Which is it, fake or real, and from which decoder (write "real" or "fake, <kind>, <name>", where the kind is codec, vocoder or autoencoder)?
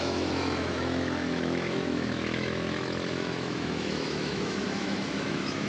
fake, autoencoder, DAC-VAE